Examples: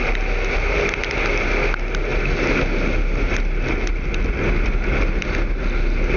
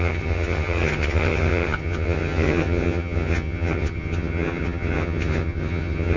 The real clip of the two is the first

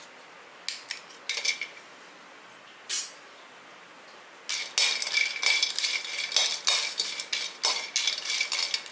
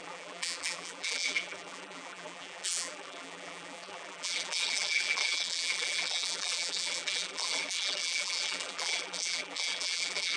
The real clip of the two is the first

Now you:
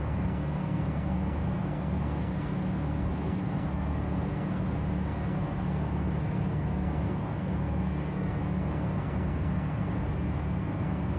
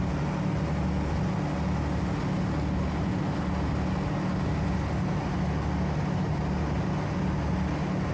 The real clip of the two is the second